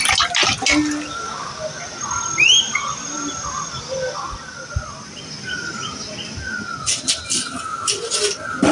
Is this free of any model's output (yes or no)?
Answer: yes